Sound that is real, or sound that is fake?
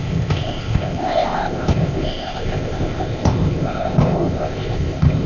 fake